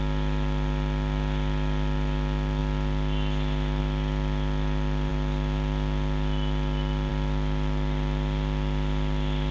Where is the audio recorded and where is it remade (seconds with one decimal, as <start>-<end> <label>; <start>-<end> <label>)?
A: 0.0-9.5 recorded